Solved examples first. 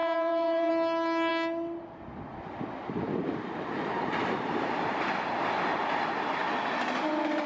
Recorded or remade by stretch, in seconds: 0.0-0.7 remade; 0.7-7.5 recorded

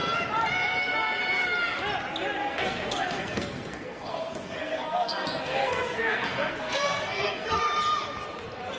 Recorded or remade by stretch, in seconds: 0.0-2.4 recorded; 2.4-7.6 remade; 7.6-8.8 recorded

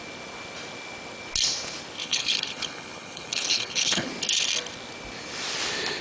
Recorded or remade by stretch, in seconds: 0.0-2.0 recorded; 2.0-4.1 remade; 4.1-6.0 recorded

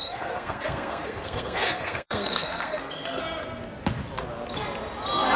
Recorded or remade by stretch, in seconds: 0.0-3.2 remade; 3.2-5.4 recorded